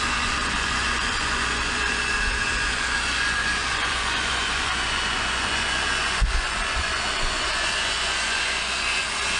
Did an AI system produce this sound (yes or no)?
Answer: yes